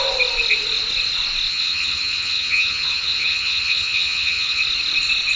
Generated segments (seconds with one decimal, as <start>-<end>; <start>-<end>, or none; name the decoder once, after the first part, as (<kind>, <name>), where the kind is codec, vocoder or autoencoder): 1.5-4.6 (vocoder, HiFi-GAN)